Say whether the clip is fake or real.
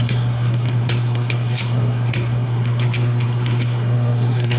fake